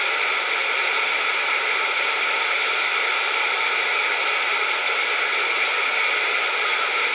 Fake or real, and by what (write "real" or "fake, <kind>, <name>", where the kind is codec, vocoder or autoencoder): real